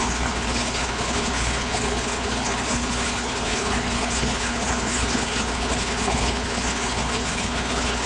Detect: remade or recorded remade